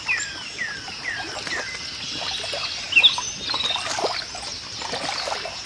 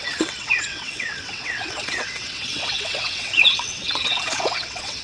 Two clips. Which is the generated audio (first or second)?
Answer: second